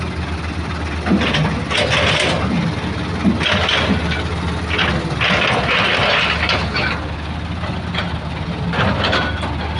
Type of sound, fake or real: real